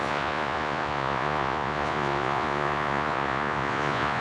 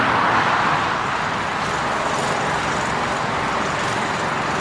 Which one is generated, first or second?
first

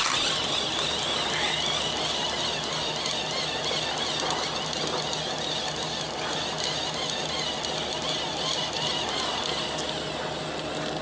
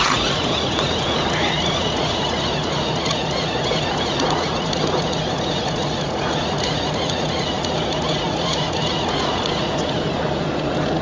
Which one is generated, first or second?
second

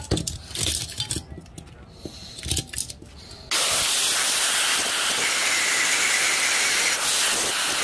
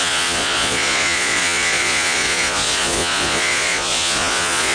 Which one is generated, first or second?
second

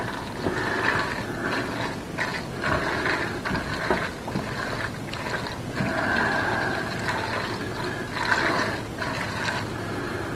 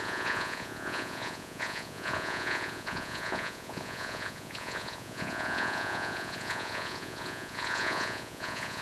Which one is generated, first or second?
second